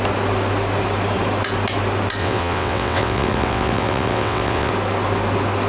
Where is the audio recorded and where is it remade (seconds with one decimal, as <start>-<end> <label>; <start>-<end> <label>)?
0.0-2.2 recorded; 2.2-4.7 remade; 4.7-5.7 recorded